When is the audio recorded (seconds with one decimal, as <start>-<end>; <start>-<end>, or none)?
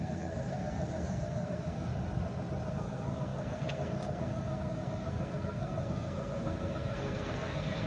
1.9-2.7